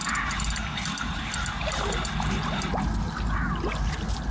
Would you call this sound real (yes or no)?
yes